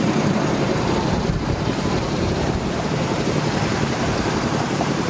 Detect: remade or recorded remade